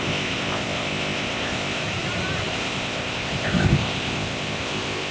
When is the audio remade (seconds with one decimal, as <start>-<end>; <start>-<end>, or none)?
0.0-1.8; 2.5-5.1